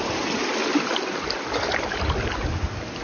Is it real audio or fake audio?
real